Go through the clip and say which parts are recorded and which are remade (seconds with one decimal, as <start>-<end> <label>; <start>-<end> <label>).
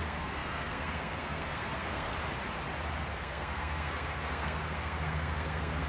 0.0-2.1 remade; 2.1-3.1 recorded; 3.1-5.9 remade